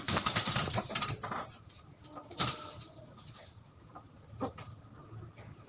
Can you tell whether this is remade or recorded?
remade